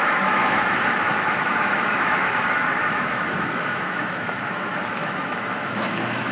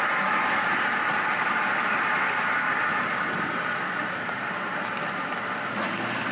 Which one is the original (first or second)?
second